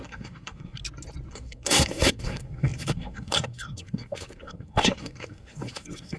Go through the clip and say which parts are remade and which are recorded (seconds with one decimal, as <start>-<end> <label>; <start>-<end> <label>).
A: 0.0-0.8 remade; 0.8-1.3 recorded; 1.3-6.2 remade